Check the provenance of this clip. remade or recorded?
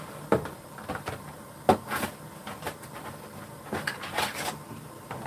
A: recorded